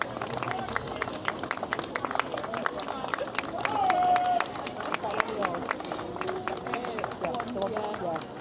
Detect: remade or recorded recorded